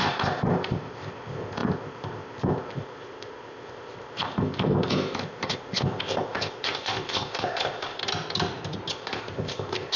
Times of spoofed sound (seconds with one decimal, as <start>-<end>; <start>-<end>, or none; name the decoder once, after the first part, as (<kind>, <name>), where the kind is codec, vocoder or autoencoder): 0.0-8.0 (codec, ZipCodec); 8.9-10.0